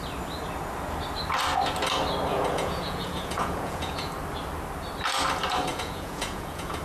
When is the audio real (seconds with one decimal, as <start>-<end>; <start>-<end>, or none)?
0.0-2.3; 4.1-5.7